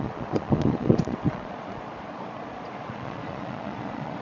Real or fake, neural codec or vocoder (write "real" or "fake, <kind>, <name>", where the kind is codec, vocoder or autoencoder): fake, vocoder, Vocos